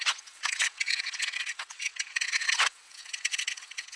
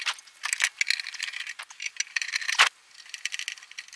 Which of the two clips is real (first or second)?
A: second